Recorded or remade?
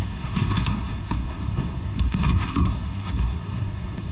remade